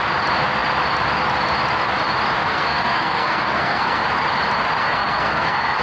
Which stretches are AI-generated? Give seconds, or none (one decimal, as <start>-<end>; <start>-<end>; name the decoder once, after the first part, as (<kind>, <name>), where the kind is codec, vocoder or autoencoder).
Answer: 2.4-4.0 (codec, SNAC); 4.8-5.8